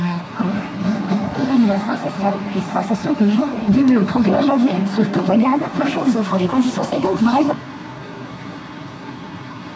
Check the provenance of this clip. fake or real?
fake